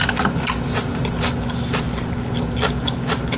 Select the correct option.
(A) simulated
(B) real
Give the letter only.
B